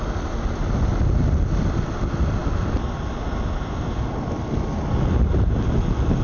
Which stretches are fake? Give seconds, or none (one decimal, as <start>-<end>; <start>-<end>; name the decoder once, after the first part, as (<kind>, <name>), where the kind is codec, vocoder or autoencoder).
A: none